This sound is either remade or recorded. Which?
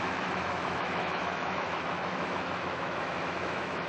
remade